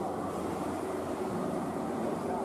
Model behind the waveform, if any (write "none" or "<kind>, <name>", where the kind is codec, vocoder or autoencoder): vocoder, BigVGAN v2